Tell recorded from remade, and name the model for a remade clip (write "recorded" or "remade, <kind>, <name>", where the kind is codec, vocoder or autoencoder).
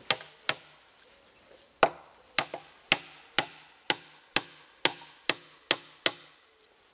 recorded